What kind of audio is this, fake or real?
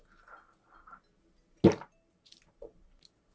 real